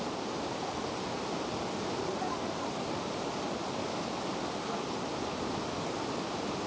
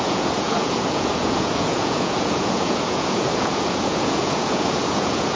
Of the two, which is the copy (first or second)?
second